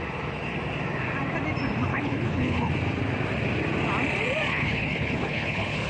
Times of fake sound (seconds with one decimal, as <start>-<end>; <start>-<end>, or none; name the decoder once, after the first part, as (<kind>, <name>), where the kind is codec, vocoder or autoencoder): 1.9-2.7 (codec, HILCodec); 4.5-5.9

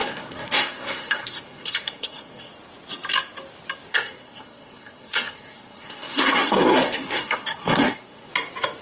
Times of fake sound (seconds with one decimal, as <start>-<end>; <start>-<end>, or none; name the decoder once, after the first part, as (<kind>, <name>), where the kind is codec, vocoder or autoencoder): 0.0-2.5 (codec, SNAC); 3.9-8.3

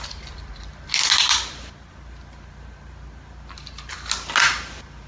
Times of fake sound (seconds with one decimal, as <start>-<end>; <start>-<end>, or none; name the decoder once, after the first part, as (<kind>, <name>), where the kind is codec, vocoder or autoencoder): none

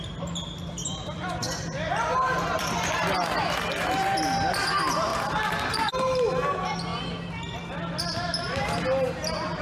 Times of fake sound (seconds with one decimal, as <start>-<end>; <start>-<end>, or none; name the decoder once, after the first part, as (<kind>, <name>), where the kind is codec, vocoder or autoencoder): 0.9-3.0 (vocoder, BigVGAN v2); 5.1-5.7

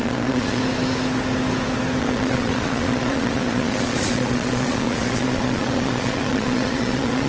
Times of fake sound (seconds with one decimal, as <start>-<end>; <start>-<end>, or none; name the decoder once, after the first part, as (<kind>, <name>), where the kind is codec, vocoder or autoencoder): 0.0-0.6 (vocoder, Vocos); 2.0-7.3